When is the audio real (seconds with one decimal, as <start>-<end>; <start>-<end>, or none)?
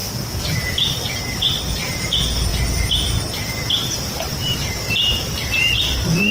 0.0-1.0; 2.5-4.0